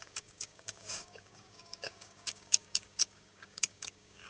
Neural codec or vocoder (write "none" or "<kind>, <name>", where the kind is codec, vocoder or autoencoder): codec, DAC